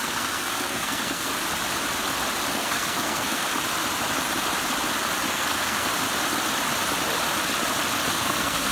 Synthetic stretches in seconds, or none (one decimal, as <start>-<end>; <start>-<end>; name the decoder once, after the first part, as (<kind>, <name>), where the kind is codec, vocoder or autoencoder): 0.0-1.3 (codec, SNAC); 2.5-3.5; 5.3-5.9; 8.1-8.7